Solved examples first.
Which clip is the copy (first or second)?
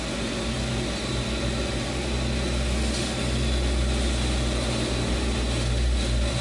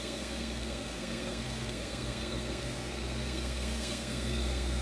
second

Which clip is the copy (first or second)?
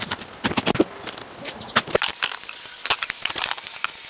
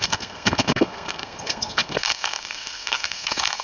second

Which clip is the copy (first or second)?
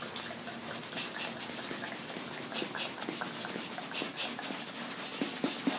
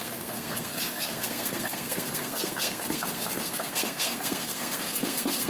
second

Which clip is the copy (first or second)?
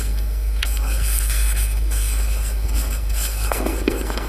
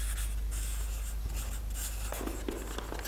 first